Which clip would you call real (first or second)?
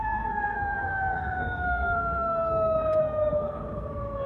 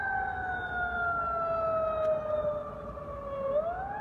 second